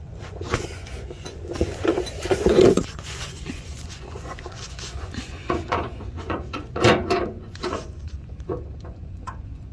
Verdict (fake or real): fake